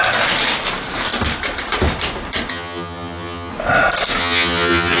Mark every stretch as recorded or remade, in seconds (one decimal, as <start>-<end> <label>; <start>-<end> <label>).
0.0-2.5 recorded; 2.5-3.5 remade; 3.5-4.2 recorded; 4.2-5.0 remade